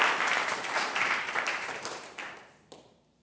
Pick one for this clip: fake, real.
fake